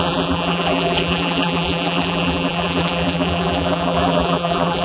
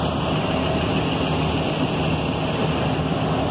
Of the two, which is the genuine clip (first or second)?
second